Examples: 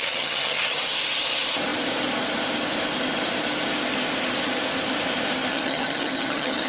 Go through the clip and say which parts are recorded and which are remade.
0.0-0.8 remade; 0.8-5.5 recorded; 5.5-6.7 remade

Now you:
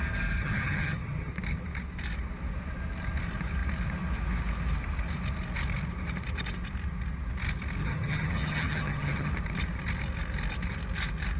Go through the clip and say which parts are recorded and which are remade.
0.0-0.4 recorded; 0.4-1.3 remade; 1.3-7.8 recorded; 7.8-9.3 remade; 9.3-11.4 recorded

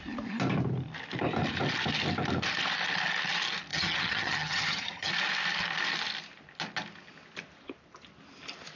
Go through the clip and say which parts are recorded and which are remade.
0.0-3.7 recorded; 3.7-5.1 remade; 5.1-8.8 recorded

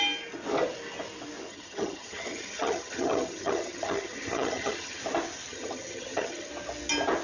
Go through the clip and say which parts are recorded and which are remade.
0.0-1.5 recorded; 1.5-5.0 remade; 5.0-5.5 recorded; 5.5-6.5 remade; 6.5-7.2 recorded

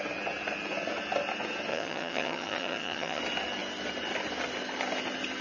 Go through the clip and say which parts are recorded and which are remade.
0.0-1.7 recorded; 1.7-3.2 remade; 3.2-5.4 recorded